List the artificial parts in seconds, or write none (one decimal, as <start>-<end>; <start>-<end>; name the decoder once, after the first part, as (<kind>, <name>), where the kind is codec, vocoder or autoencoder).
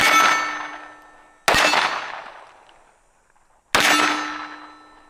none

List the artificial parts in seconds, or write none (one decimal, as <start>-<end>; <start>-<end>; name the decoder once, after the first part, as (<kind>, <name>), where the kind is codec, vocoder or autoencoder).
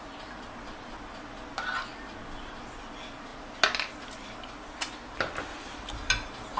none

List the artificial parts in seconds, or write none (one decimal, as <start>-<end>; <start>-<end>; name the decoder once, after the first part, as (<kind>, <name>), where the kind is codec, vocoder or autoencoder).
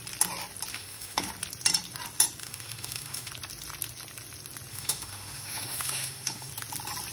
0.7-1.3 (autoencoder, DAC-VAE); 2.4-3.3; 4.7-6.5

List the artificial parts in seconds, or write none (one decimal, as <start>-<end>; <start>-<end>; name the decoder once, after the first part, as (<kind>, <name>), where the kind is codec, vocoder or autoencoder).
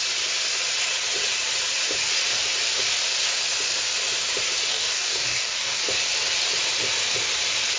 4.7-5.8 (codec, DAC)